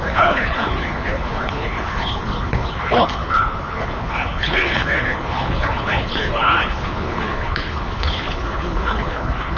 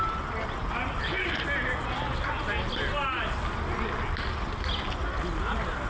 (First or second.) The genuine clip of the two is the second